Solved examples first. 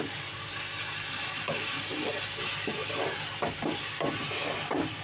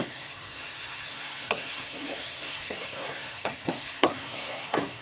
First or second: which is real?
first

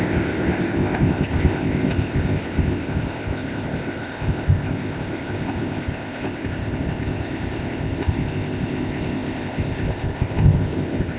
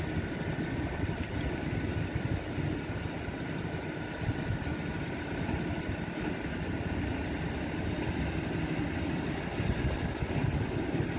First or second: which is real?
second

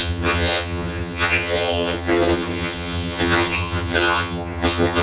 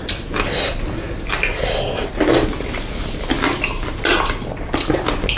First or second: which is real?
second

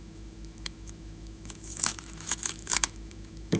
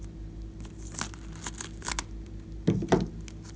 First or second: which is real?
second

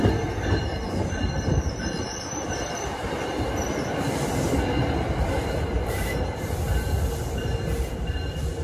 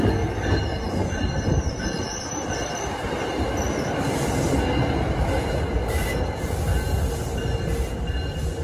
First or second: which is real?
second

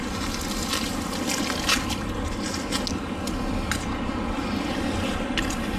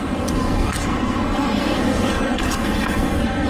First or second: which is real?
first